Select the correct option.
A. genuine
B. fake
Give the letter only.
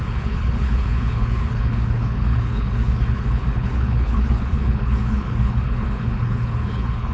B